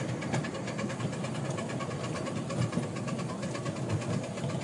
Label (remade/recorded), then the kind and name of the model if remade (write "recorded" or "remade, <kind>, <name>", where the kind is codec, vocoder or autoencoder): recorded